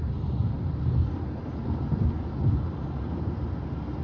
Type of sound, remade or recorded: recorded